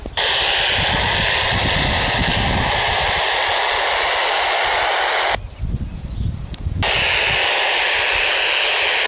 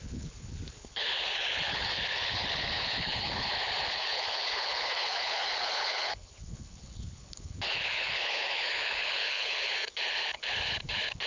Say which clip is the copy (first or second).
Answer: second